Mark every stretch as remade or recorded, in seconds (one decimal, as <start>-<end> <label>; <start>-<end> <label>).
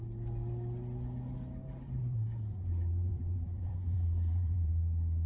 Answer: 0.0-1.6 recorded; 1.6-4.8 remade; 4.8-5.3 recorded